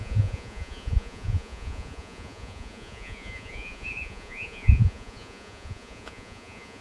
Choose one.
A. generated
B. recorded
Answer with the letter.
A